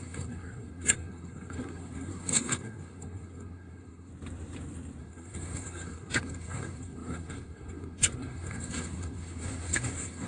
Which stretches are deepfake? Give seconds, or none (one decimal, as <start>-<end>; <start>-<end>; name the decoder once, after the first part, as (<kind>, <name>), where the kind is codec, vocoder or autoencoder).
0.0-4.1 (codec, SNAC); 5.0-10.3